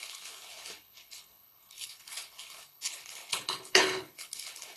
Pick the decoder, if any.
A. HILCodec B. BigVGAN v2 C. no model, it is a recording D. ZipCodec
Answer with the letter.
A